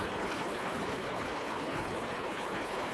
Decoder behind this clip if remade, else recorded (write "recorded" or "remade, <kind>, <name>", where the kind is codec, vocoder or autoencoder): remade, codec, HILCodec